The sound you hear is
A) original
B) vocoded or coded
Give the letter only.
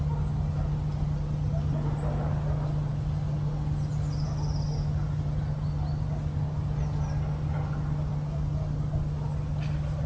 A